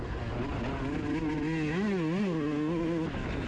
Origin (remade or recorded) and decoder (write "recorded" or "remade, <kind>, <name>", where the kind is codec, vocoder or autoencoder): recorded